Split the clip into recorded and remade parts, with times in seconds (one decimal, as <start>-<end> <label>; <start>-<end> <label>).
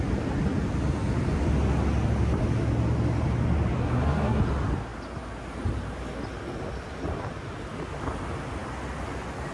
0.0-3.8 recorded; 3.8-4.4 remade; 4.4-9.5 recorded